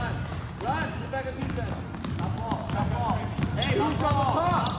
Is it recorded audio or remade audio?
recorded